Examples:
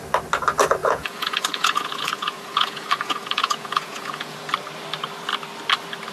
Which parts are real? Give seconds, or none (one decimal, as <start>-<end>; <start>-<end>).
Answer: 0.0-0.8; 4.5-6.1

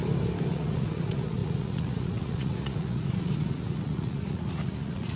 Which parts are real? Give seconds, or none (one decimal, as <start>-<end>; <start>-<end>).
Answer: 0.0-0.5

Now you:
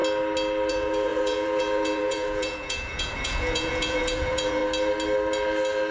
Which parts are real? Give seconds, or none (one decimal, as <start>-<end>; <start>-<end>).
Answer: 0.0-0.7; 4.6-5.9

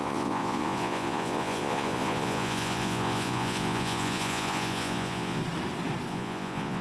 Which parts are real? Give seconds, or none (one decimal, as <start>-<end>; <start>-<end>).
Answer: 5.4-6.1

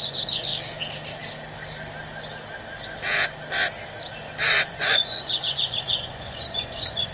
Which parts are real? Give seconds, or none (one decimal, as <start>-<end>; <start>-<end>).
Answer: 0.5-4.7